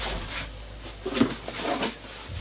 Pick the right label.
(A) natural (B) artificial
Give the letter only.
A